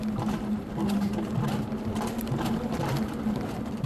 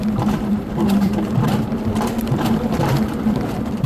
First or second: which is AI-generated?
second